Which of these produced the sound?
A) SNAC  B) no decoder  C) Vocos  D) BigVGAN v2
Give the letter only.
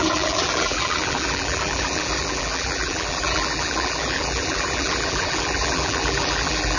D